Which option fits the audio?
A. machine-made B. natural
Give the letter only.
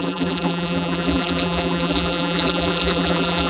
A